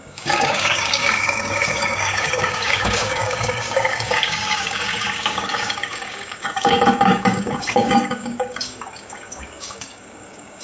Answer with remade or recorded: remade